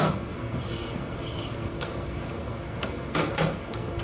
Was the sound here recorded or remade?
remade